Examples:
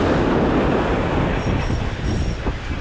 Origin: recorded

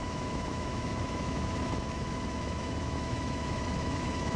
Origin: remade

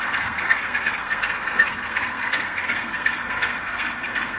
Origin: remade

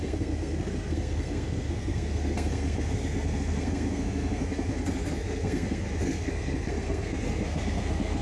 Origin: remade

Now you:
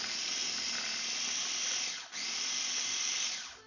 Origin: recorded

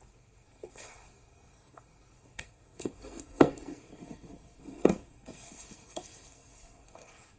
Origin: remade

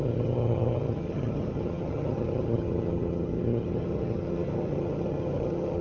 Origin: remade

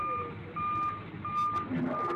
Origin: recorded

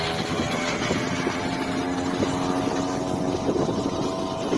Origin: recorded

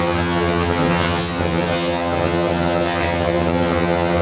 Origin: remade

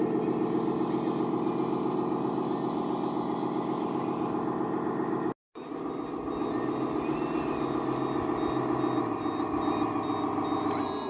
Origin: recorded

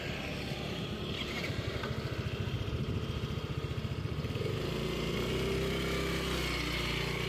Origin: recorded